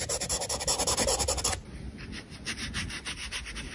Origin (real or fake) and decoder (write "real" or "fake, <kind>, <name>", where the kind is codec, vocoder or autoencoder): real